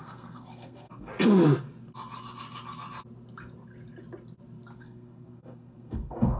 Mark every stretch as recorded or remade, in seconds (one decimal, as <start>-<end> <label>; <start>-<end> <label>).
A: 0.0-1.1 remade; 1.1-4.8 recorded; 4.8-6.4 remade